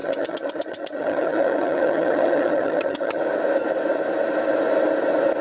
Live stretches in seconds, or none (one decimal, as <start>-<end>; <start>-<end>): 3.2-5.4